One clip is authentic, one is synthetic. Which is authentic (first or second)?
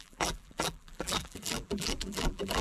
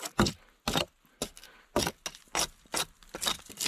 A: second